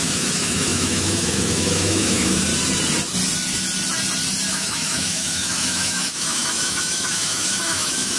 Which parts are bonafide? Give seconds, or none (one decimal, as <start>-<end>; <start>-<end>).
2.5-4.5